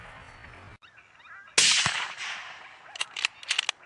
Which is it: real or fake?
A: real